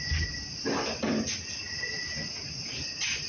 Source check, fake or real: real